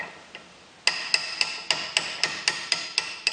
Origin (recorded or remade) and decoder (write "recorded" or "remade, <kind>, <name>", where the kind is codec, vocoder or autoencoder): recorded